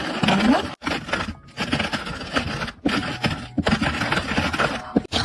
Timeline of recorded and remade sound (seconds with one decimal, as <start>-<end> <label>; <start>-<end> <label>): 0.0-5.2 recorded